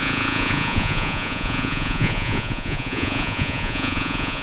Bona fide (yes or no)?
no